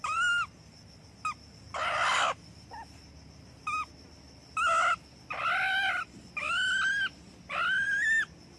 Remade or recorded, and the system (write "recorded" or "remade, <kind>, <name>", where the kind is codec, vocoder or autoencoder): remade, vocoder, BigVGAN v2